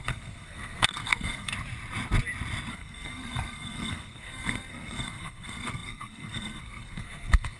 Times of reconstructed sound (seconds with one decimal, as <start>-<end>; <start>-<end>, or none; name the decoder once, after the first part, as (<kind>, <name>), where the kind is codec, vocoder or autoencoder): 0.0-1.5 (codec, SNAC); 2.7-7.6